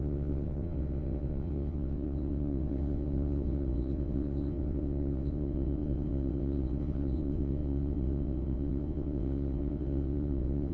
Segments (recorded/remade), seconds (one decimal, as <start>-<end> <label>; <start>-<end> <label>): 0.0-10.7 remade